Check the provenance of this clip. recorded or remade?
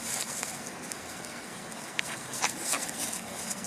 remade